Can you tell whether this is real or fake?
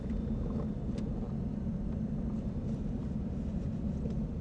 real